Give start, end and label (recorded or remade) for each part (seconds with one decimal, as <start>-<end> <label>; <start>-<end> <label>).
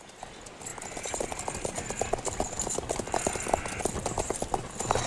0.0-5.1 recorded